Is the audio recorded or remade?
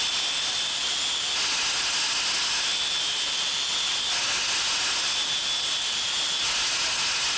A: recorded